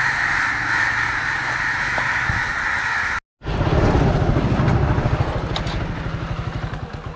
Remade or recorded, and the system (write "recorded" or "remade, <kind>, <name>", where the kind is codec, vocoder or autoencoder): recorded